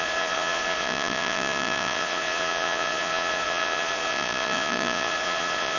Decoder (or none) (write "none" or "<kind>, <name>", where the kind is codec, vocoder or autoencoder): vocoder, Vocos